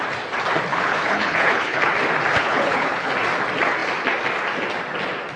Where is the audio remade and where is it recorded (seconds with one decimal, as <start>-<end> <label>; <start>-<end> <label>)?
0.0-0.7 recorded; 0.7-1.9 remade; 1.9-2.4 recorded; 2.4-3.1 remade; 3.1-5.4 recorded